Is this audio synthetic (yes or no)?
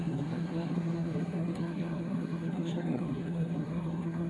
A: yes